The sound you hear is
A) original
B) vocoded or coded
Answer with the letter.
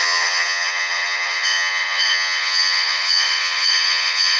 B